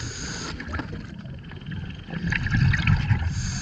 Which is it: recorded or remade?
recorded